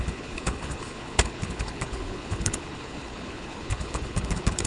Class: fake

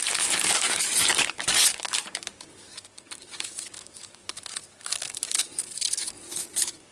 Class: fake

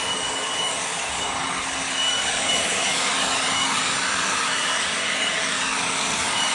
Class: fake